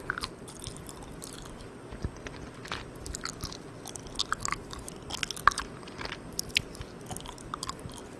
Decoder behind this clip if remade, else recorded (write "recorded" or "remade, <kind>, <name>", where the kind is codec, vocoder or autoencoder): recorded